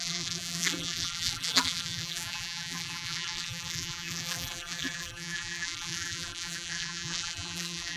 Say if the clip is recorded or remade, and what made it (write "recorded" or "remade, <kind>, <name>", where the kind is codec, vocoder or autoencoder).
remade, vocoder, BigVGAN v2